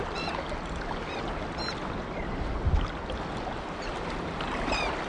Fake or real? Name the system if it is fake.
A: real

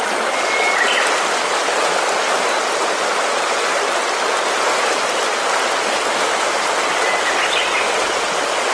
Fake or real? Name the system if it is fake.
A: real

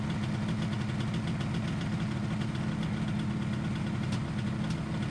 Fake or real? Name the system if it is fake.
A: real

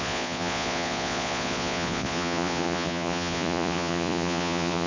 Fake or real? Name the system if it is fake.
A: fake, vocoder, Vocos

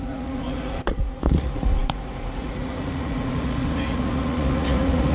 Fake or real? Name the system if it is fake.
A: fake, vocoder, Vocos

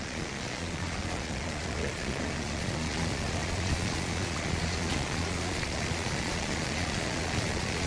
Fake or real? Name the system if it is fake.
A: fake, vocoder, Vocos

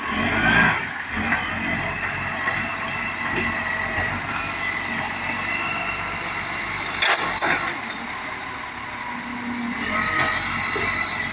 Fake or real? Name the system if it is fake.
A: real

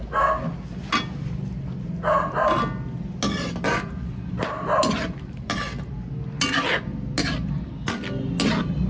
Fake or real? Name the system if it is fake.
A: real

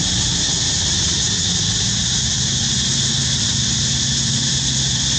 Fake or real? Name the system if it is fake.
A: real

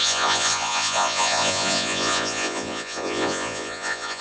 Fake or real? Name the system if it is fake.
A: fake, vocoder, Vocos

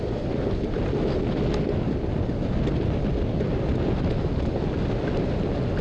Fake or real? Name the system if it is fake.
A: real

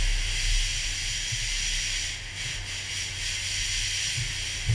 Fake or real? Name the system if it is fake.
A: real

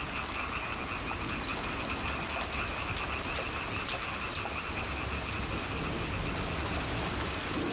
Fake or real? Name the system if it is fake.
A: real